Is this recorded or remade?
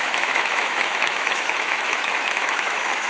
remade